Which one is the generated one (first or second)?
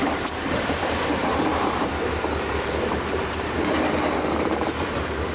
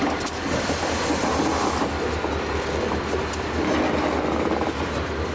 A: first